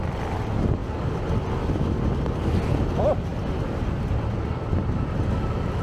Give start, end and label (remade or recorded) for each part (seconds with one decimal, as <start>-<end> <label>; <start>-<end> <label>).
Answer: 0.0-5.8 recorded